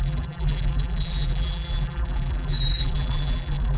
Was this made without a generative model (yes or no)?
no